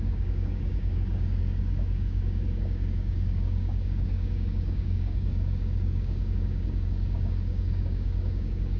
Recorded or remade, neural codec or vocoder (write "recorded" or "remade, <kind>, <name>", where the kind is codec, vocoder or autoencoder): remade, codec, DAC